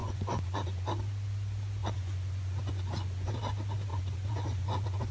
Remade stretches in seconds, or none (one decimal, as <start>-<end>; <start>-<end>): 0.0-0.9; 1.8-3.4; 3.9-5.1